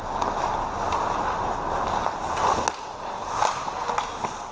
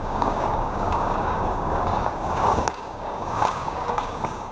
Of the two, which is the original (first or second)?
first